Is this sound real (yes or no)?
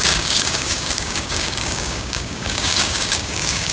no